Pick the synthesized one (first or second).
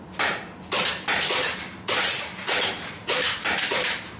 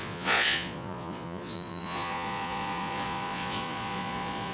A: second